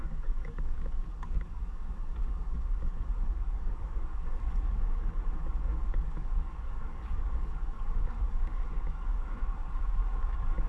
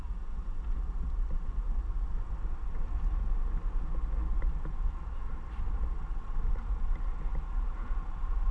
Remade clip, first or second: first